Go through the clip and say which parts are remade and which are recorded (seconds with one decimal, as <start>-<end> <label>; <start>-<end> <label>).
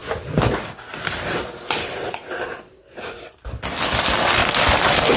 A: 0.0-5.2 recorded